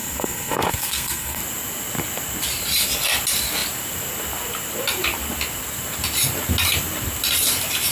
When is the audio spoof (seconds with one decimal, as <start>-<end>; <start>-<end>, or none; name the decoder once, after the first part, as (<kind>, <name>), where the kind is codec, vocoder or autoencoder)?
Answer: 0.0-1.4 (codec, SNAC)